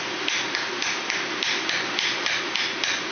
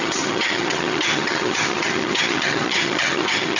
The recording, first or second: first